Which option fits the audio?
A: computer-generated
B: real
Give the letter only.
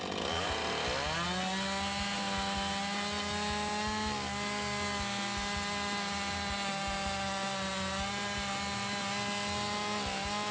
B